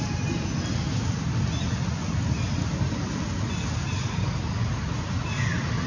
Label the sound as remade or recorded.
recorded